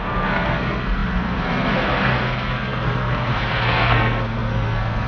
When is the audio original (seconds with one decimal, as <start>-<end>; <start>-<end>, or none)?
none